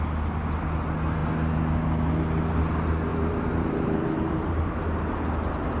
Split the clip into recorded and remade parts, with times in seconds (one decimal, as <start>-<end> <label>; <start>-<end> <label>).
0.0-3.1 recorded; 3.1-5.0 remade; 5.0-5.8 recorded